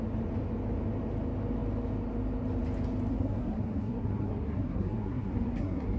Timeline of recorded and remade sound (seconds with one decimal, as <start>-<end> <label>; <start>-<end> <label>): 0.0-3.1 recorded; 3.1-6.0 remade